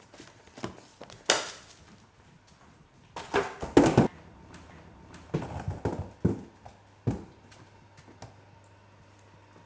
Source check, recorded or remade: recorded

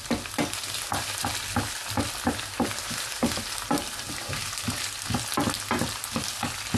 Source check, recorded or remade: recorded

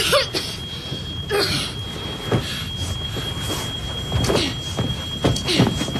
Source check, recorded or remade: recorded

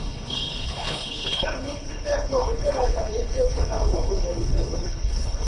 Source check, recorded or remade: remade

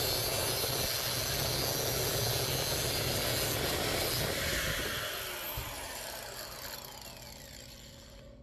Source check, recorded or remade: recorded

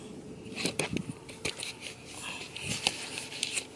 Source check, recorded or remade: recorded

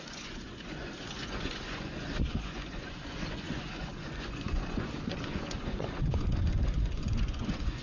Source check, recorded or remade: remade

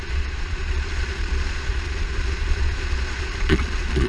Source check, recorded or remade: remade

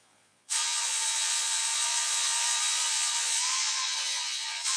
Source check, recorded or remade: remade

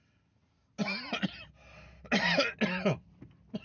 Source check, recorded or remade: recorded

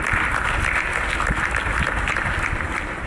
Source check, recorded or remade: recorded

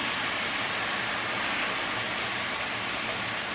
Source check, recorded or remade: recorded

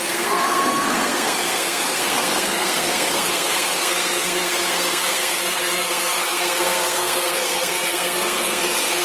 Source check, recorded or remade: remade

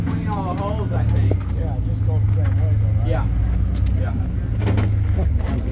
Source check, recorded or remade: recorded